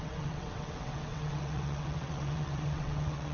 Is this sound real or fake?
fake